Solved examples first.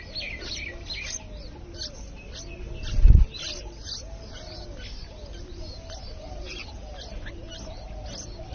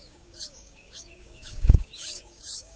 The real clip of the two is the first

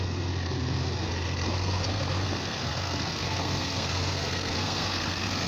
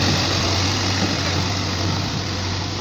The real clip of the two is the second